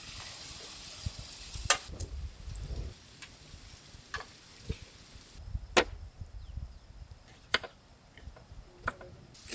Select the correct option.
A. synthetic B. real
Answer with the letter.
B